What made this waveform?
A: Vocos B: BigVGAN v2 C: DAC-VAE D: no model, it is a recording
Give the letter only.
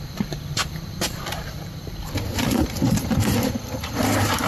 B